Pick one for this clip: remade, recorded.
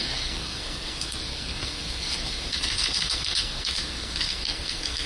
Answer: remade